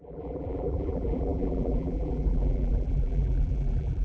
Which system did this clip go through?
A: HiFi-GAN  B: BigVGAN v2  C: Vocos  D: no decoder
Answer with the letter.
B